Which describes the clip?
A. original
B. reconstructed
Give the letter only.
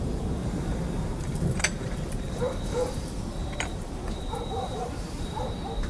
B